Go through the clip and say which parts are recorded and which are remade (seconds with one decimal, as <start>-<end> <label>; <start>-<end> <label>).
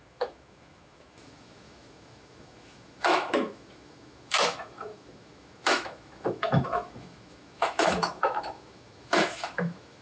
0.0-10.0 remade